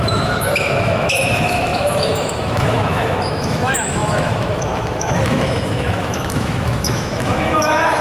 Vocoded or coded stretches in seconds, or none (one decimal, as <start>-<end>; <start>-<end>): 0.0-8.0